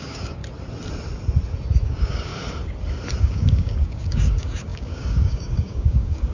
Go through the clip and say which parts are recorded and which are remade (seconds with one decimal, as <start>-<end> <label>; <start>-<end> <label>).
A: 0.0-0.4 remade; 0.4-1.8 recorded; 1.8-2.3 remade; 2.3-3.2 recorded; 3.2-6.3 remade